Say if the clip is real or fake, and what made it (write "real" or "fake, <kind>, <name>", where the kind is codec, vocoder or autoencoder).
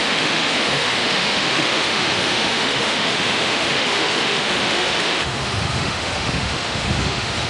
fake, autoencoder, DAC-VAE